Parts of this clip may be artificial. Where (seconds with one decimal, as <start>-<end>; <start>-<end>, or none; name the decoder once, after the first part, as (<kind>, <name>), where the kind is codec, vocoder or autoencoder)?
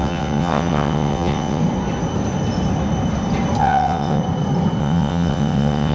0.0-1.6 (vocoder, WaveNeXt); 3.6-4.2; 4.8-5.9